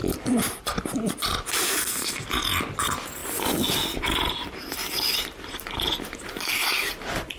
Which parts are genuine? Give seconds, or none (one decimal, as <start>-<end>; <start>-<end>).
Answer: 0.0-1.8; 2.3-7.4